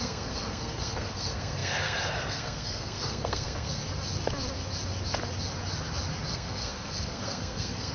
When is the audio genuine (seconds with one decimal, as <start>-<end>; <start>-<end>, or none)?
3.8-6.3